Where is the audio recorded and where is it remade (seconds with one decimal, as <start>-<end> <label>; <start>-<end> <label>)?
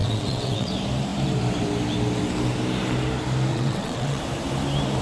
0.0-0.7 remade; 0.7-3.5 recorded; 3.5-4.2 remade; 4.2-5.0 recorded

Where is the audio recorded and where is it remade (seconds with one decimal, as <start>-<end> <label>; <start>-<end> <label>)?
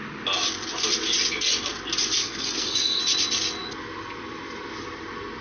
0.0-2.2 recorded; 2.2-3.0 remade; 3.0-5.4 recorded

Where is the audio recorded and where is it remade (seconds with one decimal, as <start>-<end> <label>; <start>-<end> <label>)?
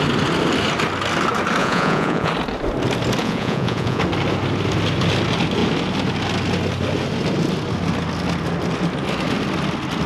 0.0-1.6 recorded; 1.6-2.3 remade; 2.3-3.2 recorded; 3.2-4.0 remade; 4.0-10.1 recorded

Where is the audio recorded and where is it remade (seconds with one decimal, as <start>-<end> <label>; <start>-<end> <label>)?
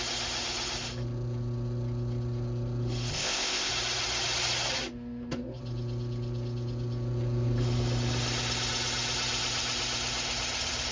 0.0-3.1 recorded; 3.1-3.7 remade; 3.7-10.9 recorded